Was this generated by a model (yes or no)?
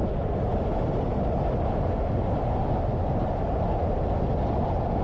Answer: no